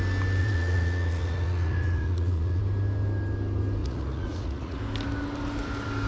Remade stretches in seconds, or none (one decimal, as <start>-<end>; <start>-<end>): 0.4-2.6; 3.8-4.8